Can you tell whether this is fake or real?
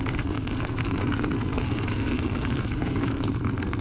fake